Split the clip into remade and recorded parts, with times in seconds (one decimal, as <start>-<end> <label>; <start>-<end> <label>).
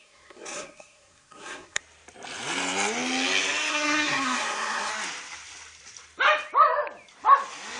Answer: 0.0-1.8 remade; 1.8-3.7 recorded; 3.7-4.9 remade; 4.9-7.8 recorded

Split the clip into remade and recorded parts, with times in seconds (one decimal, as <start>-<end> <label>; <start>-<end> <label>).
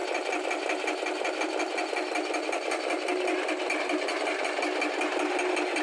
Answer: 0.0-5.8 recorded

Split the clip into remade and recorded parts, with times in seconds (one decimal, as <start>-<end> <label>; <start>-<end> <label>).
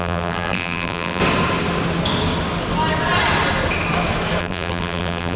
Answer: 0.0-1.2 remade; 1.2-4.4 recorded; 4.4-5.4 remade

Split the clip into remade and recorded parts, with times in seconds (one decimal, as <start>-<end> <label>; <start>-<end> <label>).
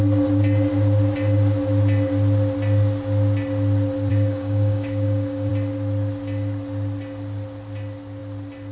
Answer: 0.0-4.1 recorded; 4.1-5.5 remade; 5.5-8.7 recorded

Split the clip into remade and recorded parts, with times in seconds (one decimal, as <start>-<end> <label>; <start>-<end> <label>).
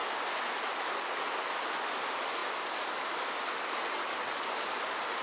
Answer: 0.0-5.2 recorded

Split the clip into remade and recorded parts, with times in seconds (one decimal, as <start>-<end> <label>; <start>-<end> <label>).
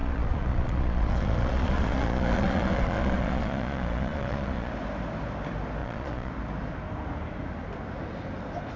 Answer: 0.0-4.7 remade; 4.7-5.8 recorded; 5.8-6.3 remade; 6.3-8.8 recorded